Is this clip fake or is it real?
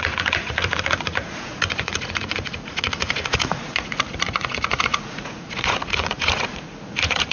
fake